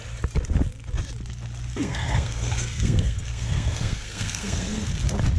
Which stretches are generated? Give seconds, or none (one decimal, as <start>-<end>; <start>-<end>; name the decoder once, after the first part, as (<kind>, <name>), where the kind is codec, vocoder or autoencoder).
1.7-4.9 (codec, SNAC)